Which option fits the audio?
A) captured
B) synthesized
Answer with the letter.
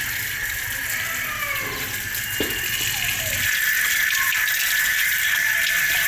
A